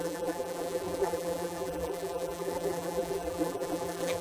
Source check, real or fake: fake